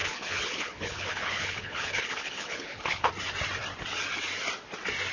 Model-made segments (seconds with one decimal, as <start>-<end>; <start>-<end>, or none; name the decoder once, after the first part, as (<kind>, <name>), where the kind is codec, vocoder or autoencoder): 0.0-3.1 (codec, HILCodec)